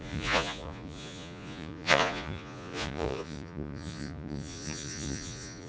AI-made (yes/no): yes